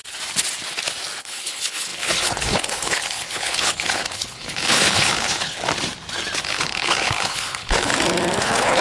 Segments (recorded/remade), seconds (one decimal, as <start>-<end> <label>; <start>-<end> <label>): 0.0-1.2 recorded; 1.2-5.6 remade; 5.6-6.4 recorded; 6.4-7.9 remade; 7.9-8.4 recorded; 8.4-8.8 remade

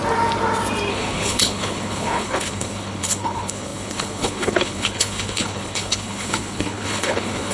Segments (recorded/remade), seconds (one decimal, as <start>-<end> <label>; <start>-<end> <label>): 0.0-0.9 recorded; 0.9-7.5 remade

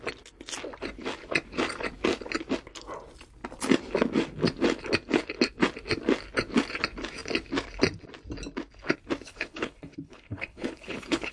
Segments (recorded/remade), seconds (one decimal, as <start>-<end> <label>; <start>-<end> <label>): 0.0-9.3 recorded; 9.3-11.3 remade

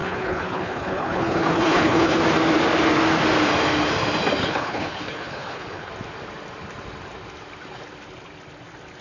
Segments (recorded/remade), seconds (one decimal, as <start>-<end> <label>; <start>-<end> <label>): 0.0-2.2 remade; 2.2-4.4 recorded; 4.4-5.9 remade; 5.9-9.0 recorded

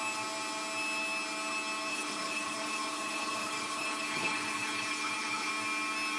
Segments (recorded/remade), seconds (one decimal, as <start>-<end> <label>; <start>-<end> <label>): 0.0-1.9 recorded; 1.9-5.5 remade; 5.5-6.2 recorded

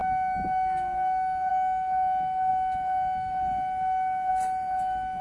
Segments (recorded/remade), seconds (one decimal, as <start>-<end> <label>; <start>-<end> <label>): 0.0-5.2 recorded

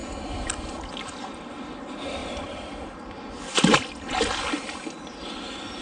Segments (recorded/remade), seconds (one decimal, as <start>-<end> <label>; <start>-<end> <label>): 0.0-5.8 recorded

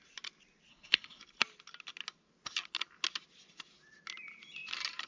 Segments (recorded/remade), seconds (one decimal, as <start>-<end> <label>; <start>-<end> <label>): 0.0-0.7 recorded; 0.7-1.2 remade; 1.2-5.1 recorded